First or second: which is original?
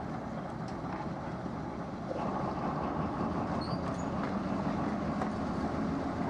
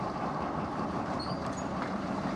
first